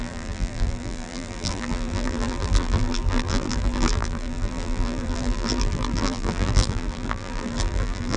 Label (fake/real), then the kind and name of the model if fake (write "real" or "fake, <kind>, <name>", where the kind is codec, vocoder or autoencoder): fake, vocoder, BigVGAN v2